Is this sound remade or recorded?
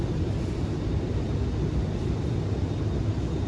recorded